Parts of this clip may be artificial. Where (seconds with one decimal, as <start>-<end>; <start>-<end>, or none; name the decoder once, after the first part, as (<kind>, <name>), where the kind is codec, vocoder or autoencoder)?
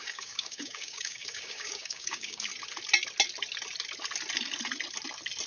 0.0-2.5 (codec, DAC)